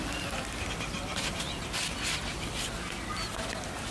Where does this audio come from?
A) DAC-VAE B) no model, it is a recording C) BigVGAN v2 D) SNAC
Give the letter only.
B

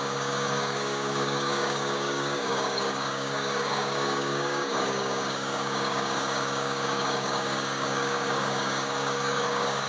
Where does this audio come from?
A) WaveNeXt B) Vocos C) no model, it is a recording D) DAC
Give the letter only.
D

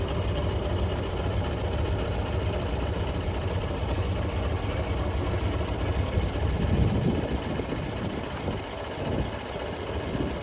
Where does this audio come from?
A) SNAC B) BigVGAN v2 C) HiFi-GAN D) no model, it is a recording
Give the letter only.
B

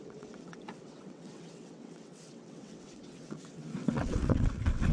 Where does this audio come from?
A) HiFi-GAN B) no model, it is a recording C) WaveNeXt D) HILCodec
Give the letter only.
C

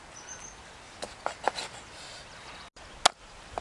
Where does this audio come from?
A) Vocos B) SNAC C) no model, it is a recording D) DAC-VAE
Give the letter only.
C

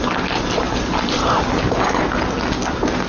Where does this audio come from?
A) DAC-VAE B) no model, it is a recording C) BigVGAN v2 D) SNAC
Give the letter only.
B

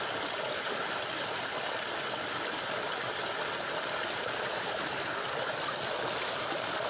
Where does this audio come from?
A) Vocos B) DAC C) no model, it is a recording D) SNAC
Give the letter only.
C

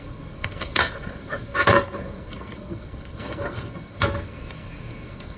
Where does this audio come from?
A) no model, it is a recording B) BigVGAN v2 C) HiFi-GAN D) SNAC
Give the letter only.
D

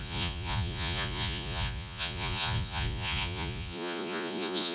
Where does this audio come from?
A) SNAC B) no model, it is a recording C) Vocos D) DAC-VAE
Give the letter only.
C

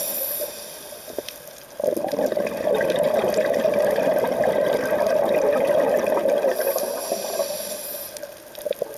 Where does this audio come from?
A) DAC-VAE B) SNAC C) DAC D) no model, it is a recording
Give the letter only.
D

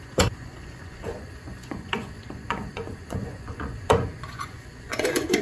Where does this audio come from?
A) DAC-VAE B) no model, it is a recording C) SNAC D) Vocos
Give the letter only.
D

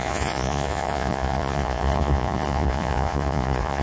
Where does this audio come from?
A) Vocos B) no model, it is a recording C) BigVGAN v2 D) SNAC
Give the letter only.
A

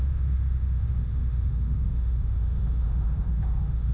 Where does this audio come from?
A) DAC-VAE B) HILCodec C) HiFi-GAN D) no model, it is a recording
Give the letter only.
A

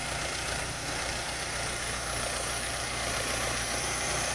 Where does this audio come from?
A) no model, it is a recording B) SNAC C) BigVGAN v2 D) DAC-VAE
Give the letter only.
C